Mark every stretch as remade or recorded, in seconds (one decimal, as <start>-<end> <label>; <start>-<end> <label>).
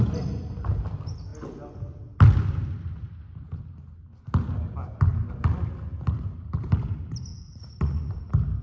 0.0-7.3 recorded; 7.3-8.2 remade; 8.2-8.6 recorded